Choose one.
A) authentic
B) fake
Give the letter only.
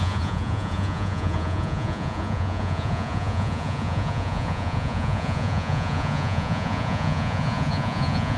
B